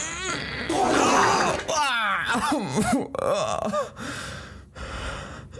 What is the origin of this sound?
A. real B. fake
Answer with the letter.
A